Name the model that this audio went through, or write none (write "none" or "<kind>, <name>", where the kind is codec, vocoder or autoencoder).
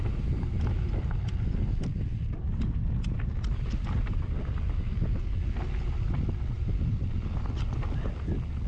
none